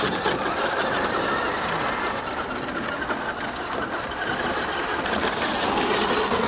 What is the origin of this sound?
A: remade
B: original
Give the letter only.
B